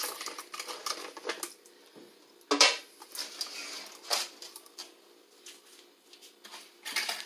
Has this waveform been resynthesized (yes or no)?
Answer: no